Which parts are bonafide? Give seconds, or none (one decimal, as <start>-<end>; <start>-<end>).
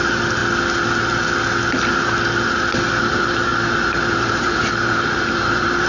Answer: 0.4-3.0